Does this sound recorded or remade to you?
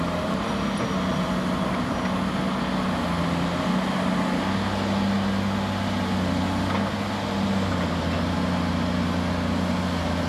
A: recorded